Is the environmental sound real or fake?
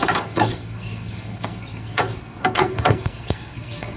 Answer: fake